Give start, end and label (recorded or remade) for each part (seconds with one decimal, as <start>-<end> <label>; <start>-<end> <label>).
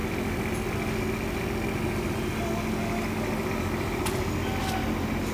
0.0-5.3 recorded